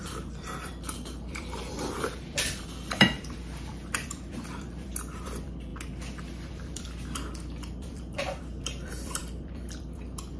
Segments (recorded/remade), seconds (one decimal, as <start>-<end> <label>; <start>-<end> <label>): 0.0-5.7 remade; 5.7-6.5 recorded; 6.5-10.4 remade